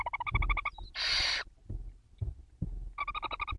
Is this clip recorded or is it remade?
recorded